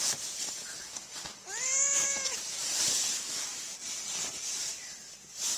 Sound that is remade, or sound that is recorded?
remade